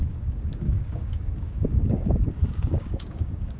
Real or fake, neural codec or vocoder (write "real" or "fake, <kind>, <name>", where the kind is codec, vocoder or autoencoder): fake, codec, DAC